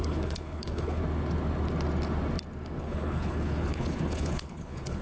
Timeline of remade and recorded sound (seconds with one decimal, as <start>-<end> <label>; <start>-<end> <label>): 0.0-1.0 remade; 1.0-2.8 recorded; 2.8-5.0 remade